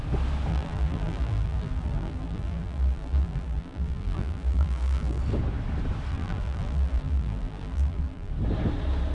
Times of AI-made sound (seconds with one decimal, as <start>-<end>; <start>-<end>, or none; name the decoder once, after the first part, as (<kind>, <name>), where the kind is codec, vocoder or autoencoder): 0.5-5.2 (vocoder, BigVGAN v2); 6.1-8.3